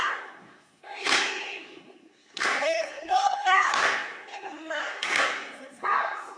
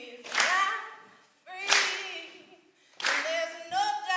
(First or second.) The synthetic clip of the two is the first